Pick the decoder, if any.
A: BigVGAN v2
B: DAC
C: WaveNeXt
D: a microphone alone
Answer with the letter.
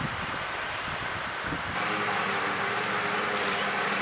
A